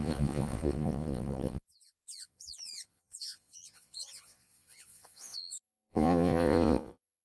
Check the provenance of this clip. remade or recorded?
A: remade